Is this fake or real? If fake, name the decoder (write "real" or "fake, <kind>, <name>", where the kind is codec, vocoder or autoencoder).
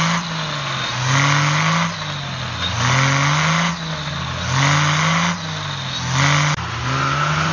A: real